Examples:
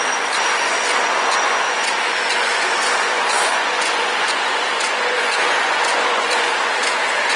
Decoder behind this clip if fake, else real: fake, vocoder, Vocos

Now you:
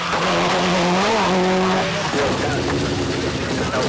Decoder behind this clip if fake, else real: real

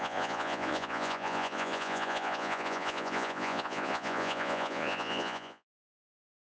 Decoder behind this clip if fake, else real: fake, vocoder, Vocos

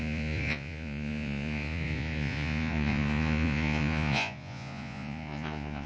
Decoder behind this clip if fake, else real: fake, vocoder, Vocos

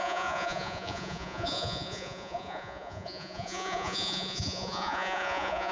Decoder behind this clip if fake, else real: fake, vocoder, Vocos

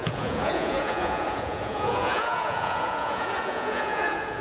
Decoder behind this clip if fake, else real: fake, vocoder, Vocos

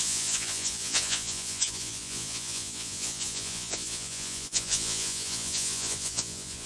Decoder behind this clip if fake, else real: fake, vocoder, Vocos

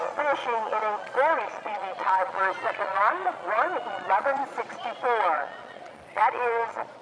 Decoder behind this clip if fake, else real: fake, vocoder, Vocos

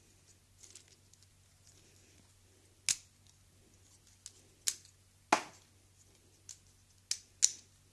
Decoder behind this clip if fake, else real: real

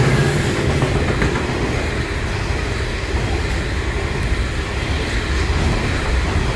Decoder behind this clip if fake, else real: real